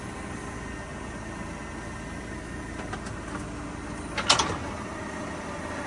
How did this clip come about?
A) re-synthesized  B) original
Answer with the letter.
B